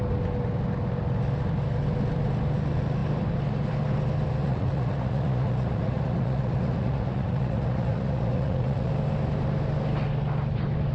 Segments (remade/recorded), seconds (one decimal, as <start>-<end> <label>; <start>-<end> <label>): 0.0-4.4 recorded; 4.4-8.9 remade; 8.9-10.9 recorded